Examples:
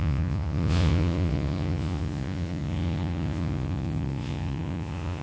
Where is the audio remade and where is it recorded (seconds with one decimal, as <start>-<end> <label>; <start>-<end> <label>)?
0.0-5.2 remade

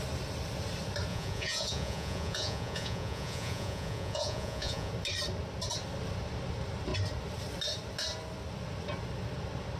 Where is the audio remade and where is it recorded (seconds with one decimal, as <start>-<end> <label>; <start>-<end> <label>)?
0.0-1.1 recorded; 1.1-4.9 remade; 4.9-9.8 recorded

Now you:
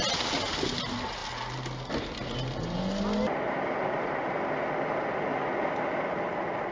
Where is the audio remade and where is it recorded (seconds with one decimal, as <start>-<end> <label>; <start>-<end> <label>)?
0.0-6.7 recorded